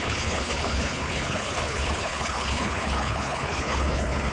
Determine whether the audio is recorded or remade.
remade